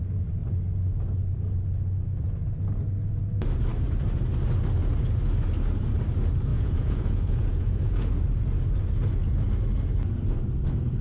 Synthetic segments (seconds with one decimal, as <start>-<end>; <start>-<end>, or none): 6.5-8.1